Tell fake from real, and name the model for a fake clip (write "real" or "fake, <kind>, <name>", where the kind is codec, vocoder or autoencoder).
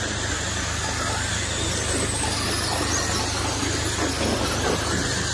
real